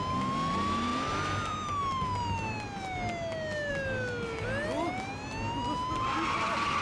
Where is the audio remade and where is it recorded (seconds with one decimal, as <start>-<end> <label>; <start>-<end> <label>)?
0.0-6.8 recorded